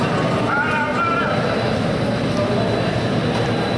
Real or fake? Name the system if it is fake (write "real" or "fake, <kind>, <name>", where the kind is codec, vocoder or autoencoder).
real